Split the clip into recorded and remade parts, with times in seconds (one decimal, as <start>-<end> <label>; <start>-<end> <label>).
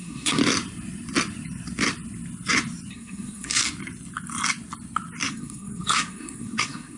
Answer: 0.0-0.4 remade; 0.4-2.9 recorded; 2.9-3.6 remade; 3.6-5.3 recorded; 5.3-7.0 remade